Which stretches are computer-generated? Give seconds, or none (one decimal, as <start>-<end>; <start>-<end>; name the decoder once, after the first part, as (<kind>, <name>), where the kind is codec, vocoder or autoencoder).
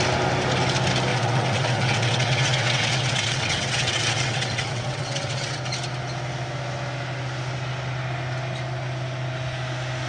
1.1-5.6 (vocoder, WaveNeXt)